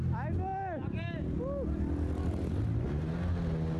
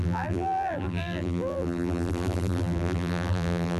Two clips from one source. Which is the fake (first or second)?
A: second